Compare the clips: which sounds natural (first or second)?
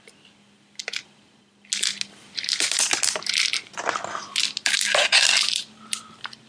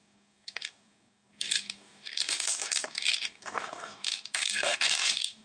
first